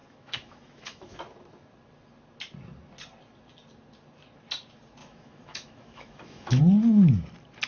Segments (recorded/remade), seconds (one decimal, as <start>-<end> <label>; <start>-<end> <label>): 0.0-1.2 remade; 1.2-5.0 recorded; 5.0-6.6 remade; 6.6-7.7 recorded